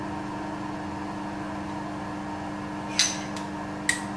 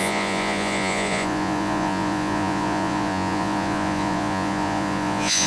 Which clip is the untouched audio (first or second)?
first